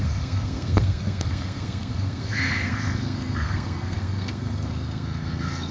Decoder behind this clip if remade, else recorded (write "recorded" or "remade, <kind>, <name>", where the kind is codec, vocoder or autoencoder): remade, codec, SNAC